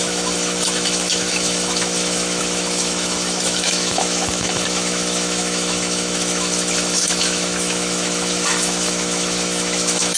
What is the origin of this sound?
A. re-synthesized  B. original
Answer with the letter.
A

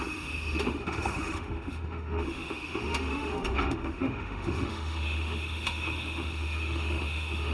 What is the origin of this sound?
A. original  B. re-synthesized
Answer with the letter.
B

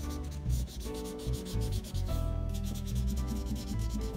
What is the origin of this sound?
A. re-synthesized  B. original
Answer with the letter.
A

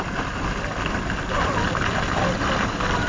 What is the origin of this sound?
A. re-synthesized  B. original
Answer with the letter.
B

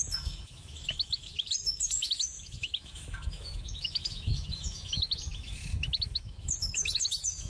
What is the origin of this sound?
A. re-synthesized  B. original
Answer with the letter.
A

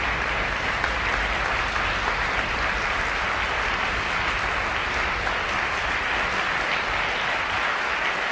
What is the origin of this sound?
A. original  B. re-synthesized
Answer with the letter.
A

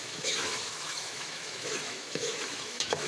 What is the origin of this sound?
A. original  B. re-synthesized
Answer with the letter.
B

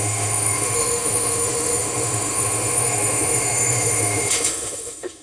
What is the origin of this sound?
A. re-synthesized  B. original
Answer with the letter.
A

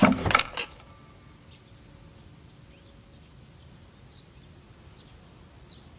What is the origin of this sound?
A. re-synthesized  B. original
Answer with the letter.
B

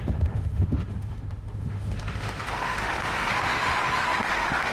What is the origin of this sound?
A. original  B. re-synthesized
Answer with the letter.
B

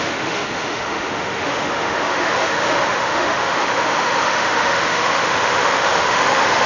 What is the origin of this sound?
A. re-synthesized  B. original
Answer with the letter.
A